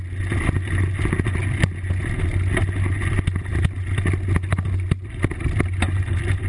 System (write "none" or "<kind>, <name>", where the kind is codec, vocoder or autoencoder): none